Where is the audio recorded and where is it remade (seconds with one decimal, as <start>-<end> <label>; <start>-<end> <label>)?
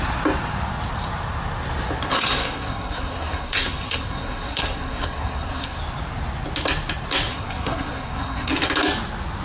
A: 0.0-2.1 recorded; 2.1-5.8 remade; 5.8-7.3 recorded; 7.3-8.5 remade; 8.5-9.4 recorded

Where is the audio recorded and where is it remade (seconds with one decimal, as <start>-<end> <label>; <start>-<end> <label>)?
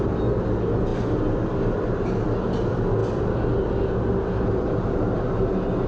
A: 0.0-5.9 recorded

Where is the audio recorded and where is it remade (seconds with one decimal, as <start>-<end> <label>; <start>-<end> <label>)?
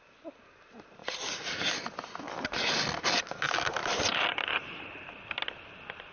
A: 0.0-1.0 recorded; 1.0-2.2 remade; 2.2-3.8 recorded; 3.8-5.1 remade; 5.1-6.1 recorded